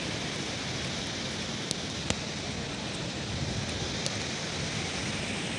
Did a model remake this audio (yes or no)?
no